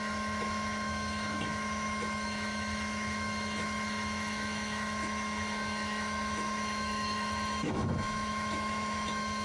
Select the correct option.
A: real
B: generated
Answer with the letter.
B